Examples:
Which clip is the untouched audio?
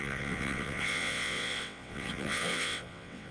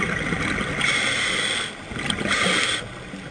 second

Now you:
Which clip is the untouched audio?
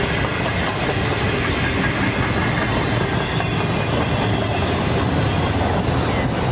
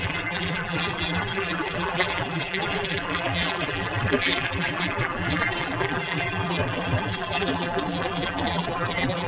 first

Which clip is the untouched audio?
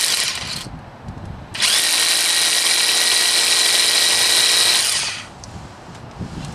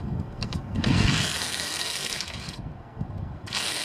first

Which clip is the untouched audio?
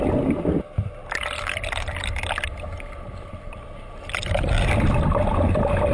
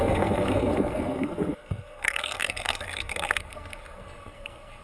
first